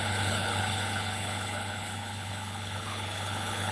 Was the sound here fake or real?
fake